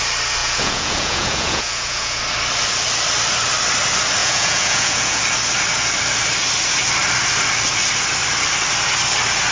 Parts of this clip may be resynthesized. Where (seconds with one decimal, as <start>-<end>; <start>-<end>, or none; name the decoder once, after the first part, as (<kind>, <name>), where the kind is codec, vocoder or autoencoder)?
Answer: 0.4-2.2 (vocoder, Vocos); 4.2-5.2